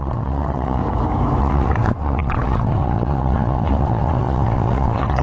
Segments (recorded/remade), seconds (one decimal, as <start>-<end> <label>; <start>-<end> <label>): 0.0-0.8 remade; 0.8-1.4 recorded; 1.4-5.2 remade